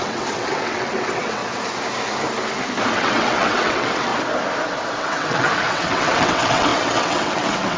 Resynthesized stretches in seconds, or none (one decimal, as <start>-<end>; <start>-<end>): 0.0-1.4; 2.9-4.1; 5.0-7.8